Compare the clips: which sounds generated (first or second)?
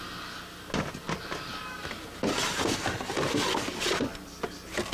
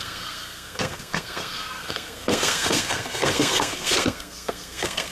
second